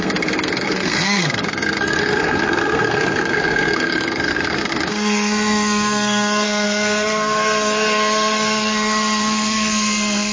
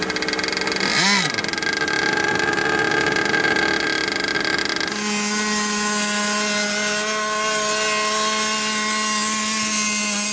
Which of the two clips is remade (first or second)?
first